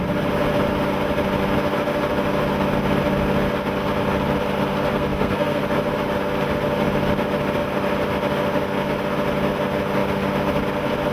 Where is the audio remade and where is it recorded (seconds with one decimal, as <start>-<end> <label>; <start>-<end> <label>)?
0.0-4.9 recorded; 4.9-5.6 remade; 5.6-11.1 recorded